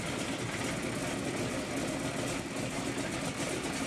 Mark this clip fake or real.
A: real